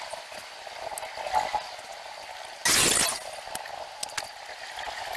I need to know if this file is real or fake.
real